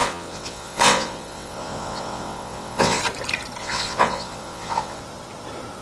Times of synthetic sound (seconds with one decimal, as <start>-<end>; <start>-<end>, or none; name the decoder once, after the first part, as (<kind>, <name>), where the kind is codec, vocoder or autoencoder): 0.0-3.0 (vocoder, WaveNeXt); 3.6-5.0

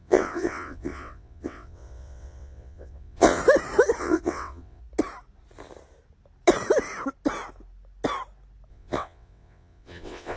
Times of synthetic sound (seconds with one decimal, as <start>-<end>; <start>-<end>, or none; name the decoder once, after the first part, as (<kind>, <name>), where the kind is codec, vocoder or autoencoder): 0.0-3.4 (vocoder, WaveNeXt); 4.0-4.8; 8.7-10.4

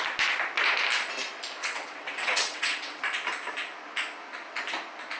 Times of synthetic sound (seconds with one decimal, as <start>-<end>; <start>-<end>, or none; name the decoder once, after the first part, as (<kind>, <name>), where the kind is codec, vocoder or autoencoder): 1.6-3.0 (vocoder, WaveNeXt)